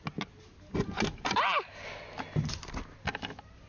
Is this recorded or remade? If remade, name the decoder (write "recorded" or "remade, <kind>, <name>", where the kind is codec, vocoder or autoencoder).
recorded